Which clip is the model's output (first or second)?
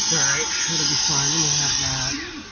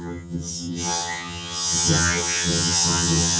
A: second